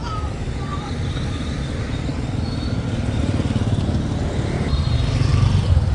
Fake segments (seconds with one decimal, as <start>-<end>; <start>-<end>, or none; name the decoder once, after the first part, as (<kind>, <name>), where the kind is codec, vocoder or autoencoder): none